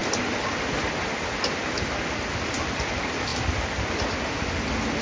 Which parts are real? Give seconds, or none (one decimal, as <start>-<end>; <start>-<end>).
0.0-5.0